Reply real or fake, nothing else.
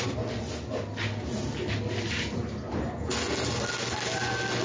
real